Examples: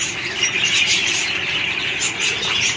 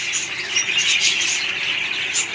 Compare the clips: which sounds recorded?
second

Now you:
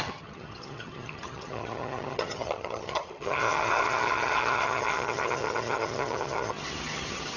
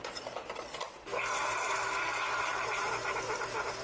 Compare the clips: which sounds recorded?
second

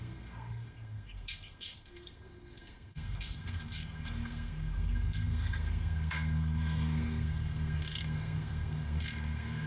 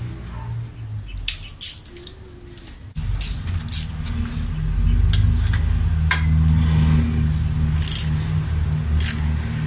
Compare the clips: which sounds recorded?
second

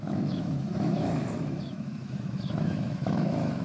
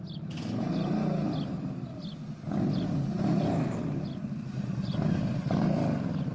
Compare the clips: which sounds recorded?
second